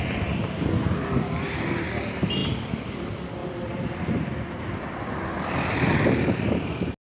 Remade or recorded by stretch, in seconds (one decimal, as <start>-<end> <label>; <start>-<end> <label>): 0.0-3.4 recorded; 3.4-4.8 remade; 4.8-7.1 recorded